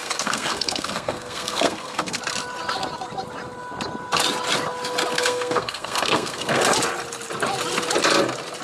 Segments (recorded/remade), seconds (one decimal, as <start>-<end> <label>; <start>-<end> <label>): 0.0-2.2 remade; 2.2-5.1 recorded; 5.1-6.6 remade; 6.6-8.6 recorded